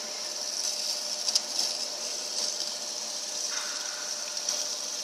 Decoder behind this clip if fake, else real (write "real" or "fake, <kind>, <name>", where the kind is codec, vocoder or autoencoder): real